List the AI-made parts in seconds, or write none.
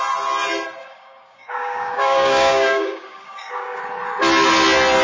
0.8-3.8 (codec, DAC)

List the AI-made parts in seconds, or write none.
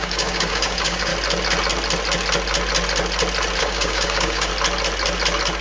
0.0-1.1 (codec, DAC); 3.6-4.5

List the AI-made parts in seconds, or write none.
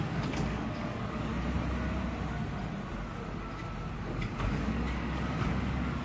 0.0-1.3 (codec, DAC); 4.0-6.0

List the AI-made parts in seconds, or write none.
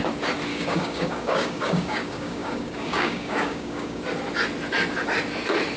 0.5-4.0 (codec, DAC)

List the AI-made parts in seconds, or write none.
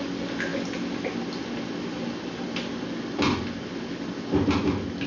none